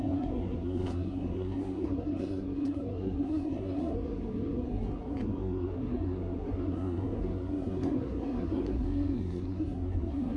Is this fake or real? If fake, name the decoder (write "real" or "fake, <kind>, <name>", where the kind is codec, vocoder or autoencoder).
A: fake, codec, SNAC